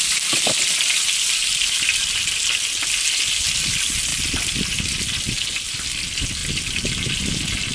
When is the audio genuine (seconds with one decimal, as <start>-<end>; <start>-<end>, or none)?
0.0-7.7